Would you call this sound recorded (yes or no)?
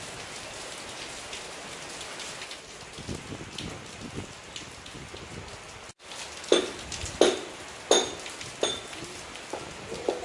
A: yes